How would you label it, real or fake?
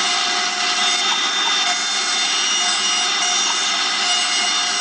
real